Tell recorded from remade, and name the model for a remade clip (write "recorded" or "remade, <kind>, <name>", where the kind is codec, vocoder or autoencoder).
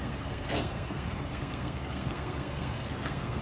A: remade, codec, SNAC